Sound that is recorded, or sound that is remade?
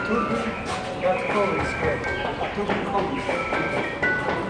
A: recorded